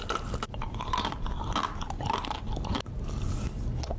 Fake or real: real